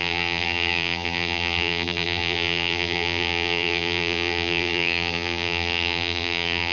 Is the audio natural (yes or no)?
no